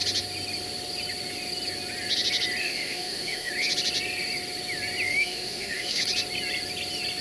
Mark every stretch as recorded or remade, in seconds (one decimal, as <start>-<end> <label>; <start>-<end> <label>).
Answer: 0.0-2.6 recorded; 2.6-3.5 remade; 3.5-5.1 recorded; 5.1-6.0 remade; 6.0-7.2 recorded